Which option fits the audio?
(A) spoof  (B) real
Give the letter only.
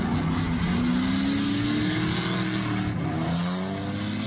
B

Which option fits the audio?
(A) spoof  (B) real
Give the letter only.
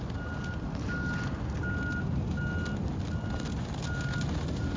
B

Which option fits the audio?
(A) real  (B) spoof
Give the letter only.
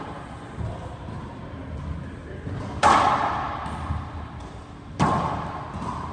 A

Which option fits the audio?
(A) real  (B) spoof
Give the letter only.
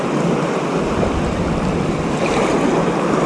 A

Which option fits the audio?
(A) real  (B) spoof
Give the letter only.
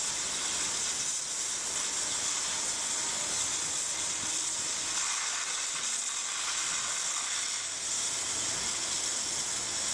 A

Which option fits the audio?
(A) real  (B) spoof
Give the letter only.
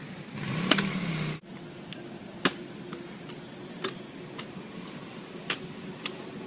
A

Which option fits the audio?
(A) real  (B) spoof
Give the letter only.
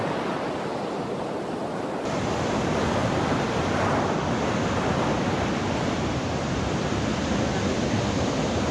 A